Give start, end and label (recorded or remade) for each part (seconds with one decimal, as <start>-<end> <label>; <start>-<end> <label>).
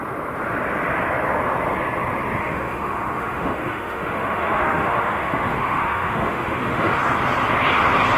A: 0.0-2.4 recorded; 2.4-7.0 remade; 7.0-8.2 recorded